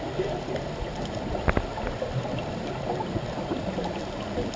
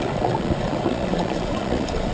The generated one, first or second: second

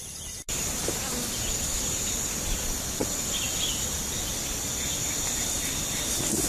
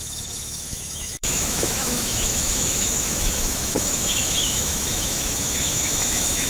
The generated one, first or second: second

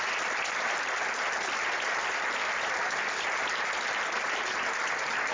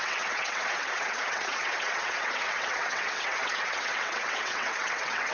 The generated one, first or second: second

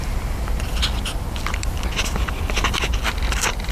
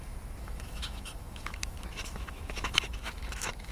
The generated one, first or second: second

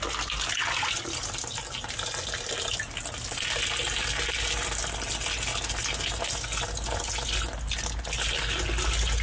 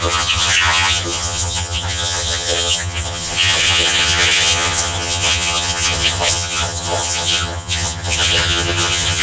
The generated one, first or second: second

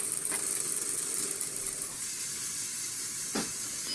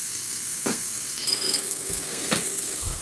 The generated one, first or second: second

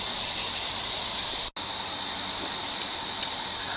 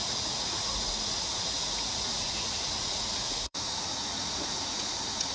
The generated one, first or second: second